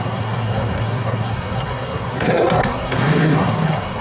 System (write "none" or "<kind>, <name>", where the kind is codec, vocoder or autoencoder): codec, SNAC